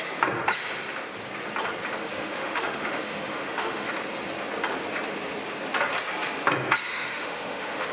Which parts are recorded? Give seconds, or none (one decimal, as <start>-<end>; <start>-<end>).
0.0-2.0; 3.9-6.9